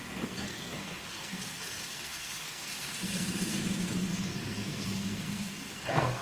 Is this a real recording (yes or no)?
no